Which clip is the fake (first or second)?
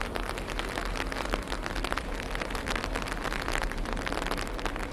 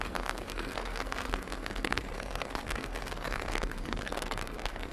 second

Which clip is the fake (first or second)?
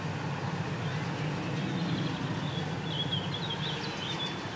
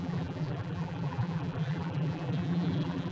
second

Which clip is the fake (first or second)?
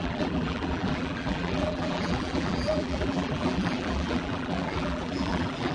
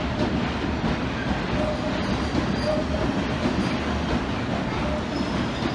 first